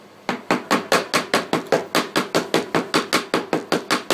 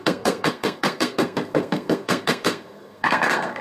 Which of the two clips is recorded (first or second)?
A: first